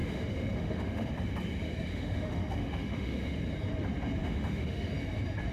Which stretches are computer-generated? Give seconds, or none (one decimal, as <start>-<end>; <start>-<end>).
0.0-1.1; 1.9-3.4; 4.2-4.9